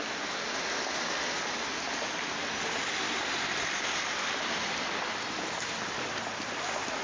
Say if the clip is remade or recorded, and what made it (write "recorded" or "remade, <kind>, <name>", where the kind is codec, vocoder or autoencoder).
recorded